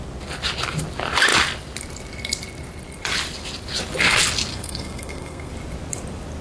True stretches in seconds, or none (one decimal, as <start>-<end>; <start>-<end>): 0.0-4.5; 5.5-6.4